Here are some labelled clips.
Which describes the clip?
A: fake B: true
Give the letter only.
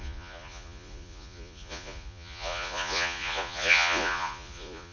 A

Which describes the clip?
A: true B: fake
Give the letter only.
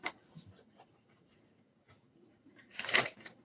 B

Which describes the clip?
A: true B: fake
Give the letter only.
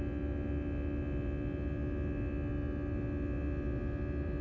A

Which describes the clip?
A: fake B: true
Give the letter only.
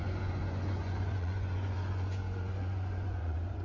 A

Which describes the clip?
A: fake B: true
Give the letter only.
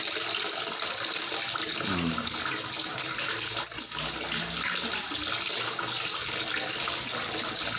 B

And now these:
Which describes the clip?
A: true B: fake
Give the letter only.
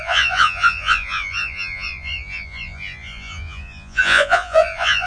B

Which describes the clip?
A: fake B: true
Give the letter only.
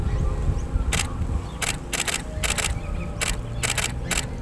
B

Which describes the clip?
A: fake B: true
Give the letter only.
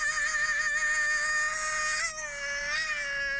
B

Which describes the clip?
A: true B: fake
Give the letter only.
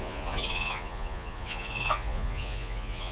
B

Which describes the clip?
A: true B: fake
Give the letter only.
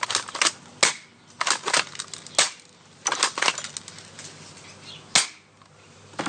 A